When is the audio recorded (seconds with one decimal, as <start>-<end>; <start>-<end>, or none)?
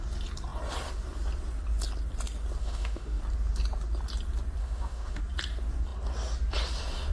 0.0-2.6; 3.2-4.6; 5.2-7.1